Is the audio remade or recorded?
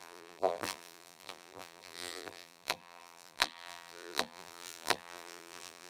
remade